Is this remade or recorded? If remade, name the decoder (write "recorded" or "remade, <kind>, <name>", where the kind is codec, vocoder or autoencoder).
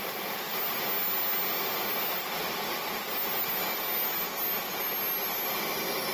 recorded